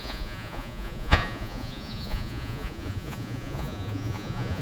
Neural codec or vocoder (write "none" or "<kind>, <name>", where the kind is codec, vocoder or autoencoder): vocoder, Vocos